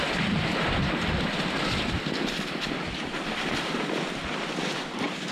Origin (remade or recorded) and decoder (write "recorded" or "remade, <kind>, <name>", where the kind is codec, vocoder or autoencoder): remade, vocoder, BigVGAN v2